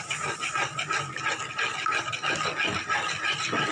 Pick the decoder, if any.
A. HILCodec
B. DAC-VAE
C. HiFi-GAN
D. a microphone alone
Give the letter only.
D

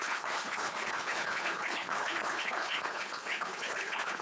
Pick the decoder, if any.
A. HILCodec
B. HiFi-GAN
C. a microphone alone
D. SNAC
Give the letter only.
A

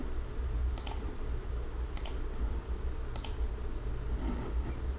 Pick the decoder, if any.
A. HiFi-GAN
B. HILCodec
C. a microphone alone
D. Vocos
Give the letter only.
C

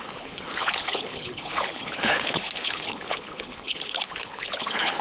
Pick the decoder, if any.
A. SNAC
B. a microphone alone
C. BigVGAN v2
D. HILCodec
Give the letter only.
D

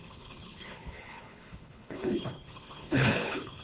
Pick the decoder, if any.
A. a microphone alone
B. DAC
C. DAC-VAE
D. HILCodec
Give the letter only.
D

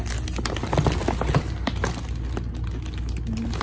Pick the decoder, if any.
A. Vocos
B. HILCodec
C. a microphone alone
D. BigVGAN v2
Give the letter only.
C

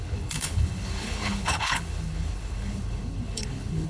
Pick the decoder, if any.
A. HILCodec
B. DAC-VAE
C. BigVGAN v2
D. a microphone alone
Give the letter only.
A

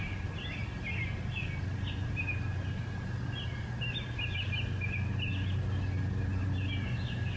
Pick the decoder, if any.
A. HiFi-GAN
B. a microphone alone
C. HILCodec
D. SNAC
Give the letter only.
B